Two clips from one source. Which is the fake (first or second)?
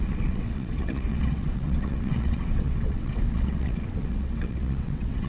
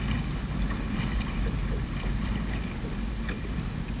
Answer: first